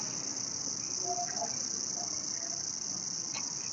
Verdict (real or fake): real